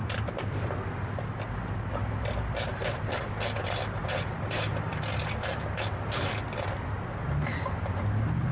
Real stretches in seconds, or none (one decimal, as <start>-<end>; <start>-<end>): 0.0-8.5